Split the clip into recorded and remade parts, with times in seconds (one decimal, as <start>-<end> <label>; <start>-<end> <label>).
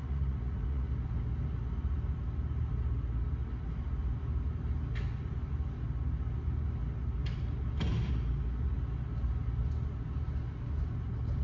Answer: 0.0-0.9 remade; 0.9-11.4 recorded